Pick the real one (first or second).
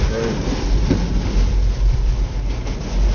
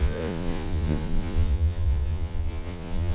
first